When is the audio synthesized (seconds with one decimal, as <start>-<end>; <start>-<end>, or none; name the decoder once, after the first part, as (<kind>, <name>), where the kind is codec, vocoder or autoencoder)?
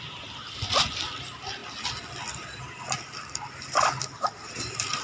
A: none